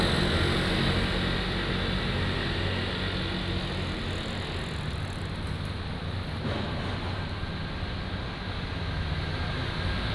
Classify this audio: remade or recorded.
recorded